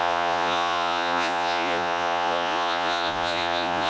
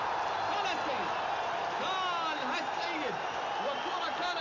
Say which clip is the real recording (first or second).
second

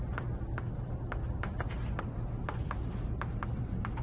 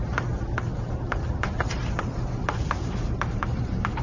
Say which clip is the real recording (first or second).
first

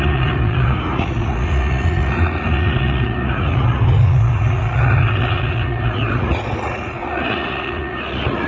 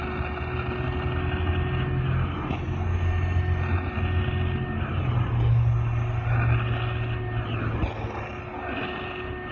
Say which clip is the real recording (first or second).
second